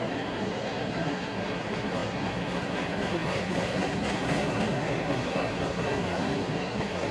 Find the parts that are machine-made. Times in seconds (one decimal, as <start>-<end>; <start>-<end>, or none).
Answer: 0.0-7.1